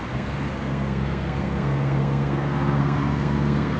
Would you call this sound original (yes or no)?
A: no